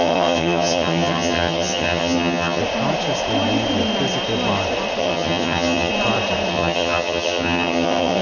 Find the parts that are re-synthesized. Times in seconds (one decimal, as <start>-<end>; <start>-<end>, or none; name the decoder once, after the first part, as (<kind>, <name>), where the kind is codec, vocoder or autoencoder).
0.0-2.6 (vocoder, HiFi-GAN); 5.0-5.9; 6.5-8.2